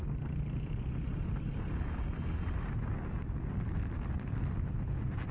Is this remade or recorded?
recorded